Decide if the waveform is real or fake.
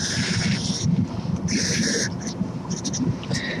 fake